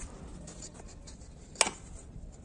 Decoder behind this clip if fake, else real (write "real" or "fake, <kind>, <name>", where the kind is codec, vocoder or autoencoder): real